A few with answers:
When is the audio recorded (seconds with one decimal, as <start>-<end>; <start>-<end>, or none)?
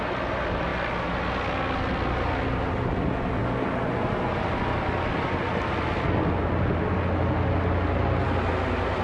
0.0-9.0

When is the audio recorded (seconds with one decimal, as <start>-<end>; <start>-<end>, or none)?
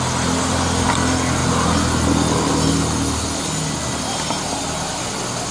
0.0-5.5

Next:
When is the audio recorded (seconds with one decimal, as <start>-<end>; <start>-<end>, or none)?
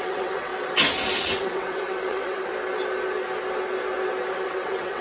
0.5-1.2; 2.5-4.3